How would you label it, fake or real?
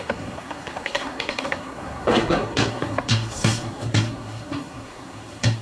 fake